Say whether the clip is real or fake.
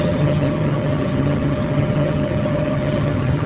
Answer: fake